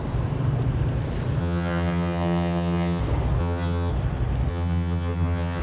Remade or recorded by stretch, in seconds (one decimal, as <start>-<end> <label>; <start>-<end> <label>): 0.0-1.4 recorded; 1.4-3.0 remade; 3.0-3.4 recorded; 3.4-3.9 remade; 3.9-4.5 recorded; 4.5-5.6 remade